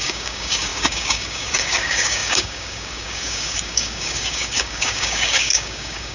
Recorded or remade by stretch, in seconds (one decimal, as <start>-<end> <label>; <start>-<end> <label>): 0.0-6.1 remade